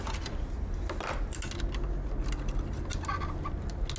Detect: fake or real real